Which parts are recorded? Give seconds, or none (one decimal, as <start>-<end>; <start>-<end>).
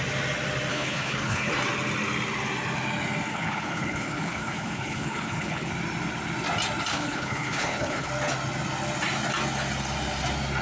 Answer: 0.0-0.7; 1.5-3.3; 5.7-6.9; 8.1-10.6